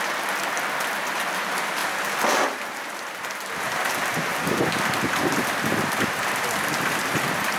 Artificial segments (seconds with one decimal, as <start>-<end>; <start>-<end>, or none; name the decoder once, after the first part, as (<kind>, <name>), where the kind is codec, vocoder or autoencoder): 0.0-7.6 (vocoder, BigVGAN v2)